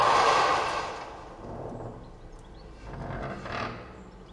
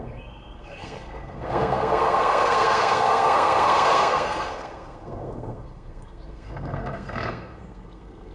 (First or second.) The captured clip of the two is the first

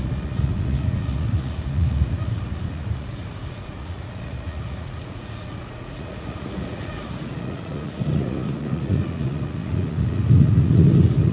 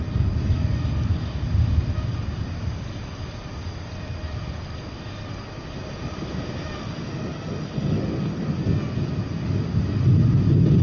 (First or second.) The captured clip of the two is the second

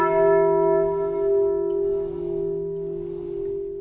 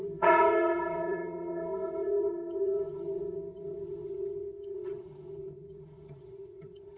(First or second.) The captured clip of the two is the first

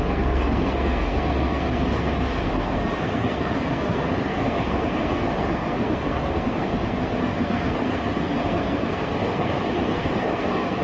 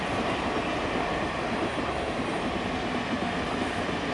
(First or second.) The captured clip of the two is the second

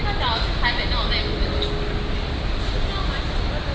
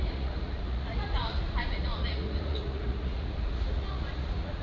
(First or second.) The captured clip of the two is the first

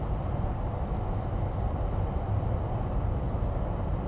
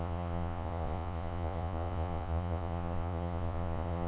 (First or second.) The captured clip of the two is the first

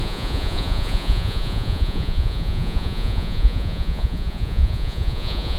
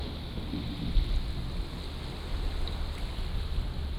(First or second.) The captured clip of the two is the second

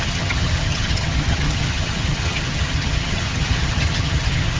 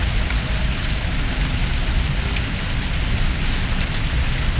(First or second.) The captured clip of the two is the second